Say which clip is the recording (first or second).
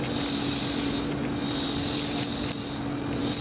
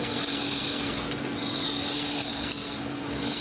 first